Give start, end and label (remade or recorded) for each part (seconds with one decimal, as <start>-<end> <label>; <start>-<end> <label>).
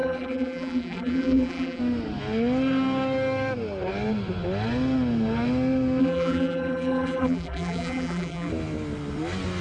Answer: 0.0-1.8 remade; 1.8-6.0 recorded; 6.0-8.5 remade; 8.5-9.6 recorded